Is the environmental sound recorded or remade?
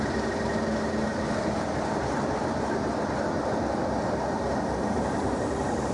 recorded